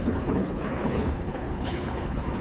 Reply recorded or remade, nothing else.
remade